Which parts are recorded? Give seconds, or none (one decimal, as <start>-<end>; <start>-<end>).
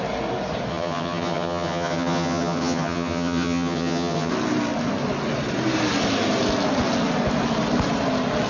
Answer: 0.0-0.7; 4.3-8.5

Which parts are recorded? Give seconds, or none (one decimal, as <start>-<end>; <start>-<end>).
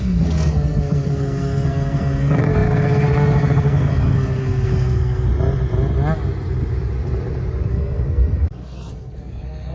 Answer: 5.3-7.7